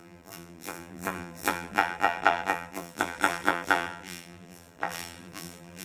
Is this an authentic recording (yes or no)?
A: no